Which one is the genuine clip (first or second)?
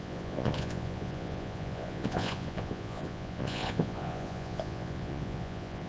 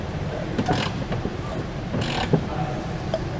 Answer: second